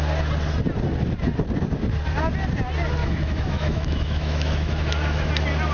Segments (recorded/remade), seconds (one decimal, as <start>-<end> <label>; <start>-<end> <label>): 0.0-3.0 recorded; 3.0-5.3 remade; 5.3-5.7 recorded